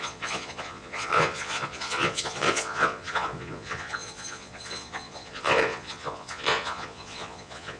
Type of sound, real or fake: fake